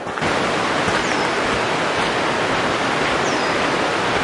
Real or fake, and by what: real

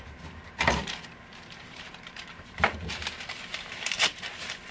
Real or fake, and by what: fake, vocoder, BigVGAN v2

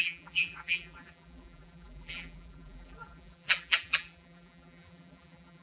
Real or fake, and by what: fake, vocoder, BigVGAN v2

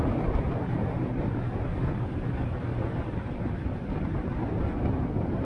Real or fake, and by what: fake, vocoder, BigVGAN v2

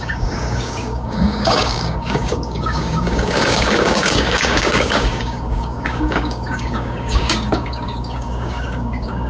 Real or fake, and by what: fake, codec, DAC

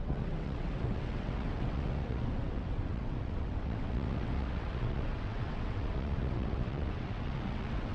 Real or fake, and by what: fake, vocoder, WaveNeXt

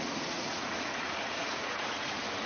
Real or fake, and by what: fake, vocoder, Vocos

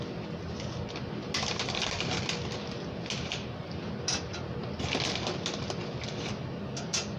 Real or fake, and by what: real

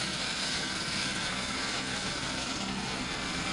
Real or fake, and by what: fake, codec, SNAC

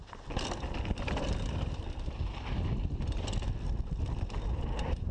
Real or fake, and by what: real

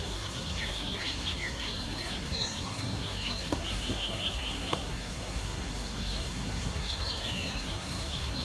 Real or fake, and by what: fake, codec, SNAC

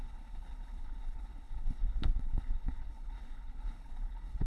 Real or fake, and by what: fake, codec, HILCodec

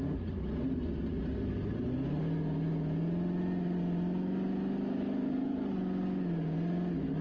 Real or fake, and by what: real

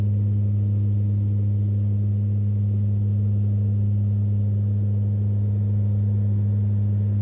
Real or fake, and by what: real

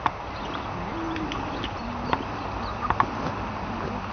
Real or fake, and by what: real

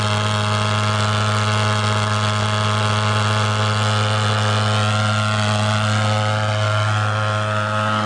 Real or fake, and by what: real